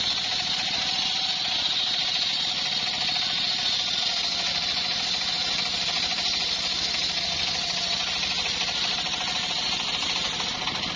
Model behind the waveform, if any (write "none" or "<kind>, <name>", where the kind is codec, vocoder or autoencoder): none